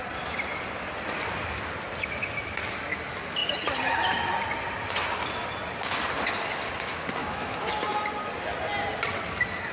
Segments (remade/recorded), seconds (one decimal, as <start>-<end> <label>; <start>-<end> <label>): 0.0-7.2 recorded; 7.2-7.7 remade; 7.7-9.7 recorded